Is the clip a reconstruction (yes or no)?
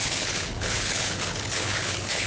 yes